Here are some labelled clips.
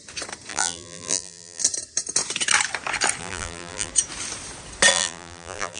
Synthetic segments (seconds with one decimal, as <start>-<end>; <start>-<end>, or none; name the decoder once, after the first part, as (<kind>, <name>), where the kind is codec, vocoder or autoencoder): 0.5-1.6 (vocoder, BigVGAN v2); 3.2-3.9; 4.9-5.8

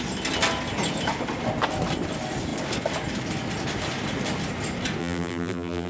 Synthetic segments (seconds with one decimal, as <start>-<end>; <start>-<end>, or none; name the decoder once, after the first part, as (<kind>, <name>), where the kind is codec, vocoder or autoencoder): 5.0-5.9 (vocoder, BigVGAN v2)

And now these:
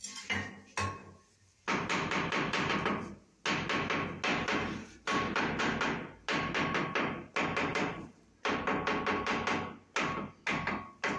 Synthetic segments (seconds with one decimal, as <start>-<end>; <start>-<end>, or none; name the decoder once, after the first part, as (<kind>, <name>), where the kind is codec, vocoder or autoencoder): 1.0-2.7 (vocoder, BigVGAN v2); 4.3-5.6; 7.7-8.6

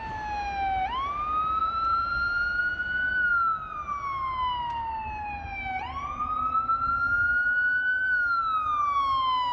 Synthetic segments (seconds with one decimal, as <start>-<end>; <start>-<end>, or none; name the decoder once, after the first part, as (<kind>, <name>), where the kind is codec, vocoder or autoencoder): 1.6-2.6 (vocoder, BigVGAN v2)